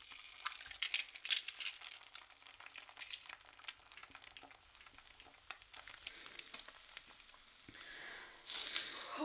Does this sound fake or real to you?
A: real